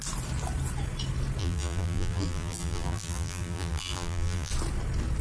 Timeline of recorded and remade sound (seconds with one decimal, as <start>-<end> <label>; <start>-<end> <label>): 0.0-1.4 recorded; 1.4-4.5 remade; 4.5-5.2 recorded